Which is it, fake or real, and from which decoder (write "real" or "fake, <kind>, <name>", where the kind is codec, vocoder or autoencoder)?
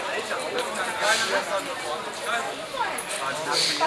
real